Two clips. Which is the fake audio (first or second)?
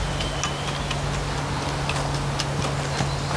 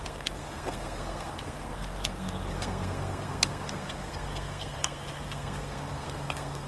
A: second